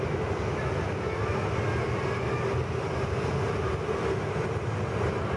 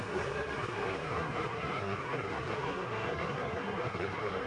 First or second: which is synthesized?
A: second